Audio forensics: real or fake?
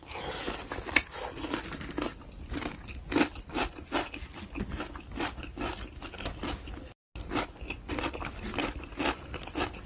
real